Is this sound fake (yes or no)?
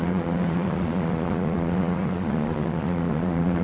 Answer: yes